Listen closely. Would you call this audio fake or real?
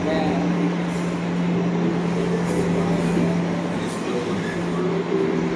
real